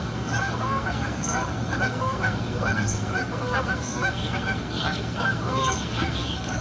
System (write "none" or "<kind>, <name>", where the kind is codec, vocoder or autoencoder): codec, SNAC